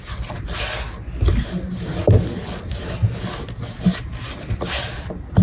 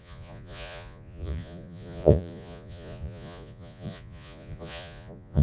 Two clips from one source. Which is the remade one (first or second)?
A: second